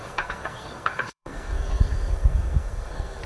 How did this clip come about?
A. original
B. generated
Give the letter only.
B